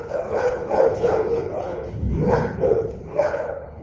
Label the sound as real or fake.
fake